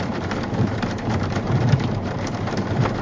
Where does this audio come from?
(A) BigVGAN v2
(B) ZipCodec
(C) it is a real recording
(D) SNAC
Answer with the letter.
A